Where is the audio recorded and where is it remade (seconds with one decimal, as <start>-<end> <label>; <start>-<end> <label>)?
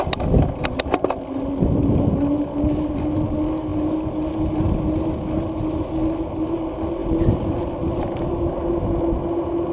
0.0-7.0 recorded; 7.0-7.6 remade; 7.6-9.7 recorded